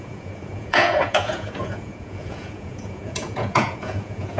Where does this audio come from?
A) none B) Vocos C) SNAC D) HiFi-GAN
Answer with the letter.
B